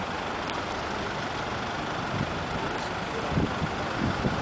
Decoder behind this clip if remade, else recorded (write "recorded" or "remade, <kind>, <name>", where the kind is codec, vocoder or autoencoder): recorded